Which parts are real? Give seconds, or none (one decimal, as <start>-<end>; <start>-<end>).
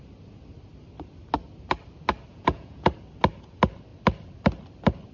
0.0-2.3; 2.9-5.1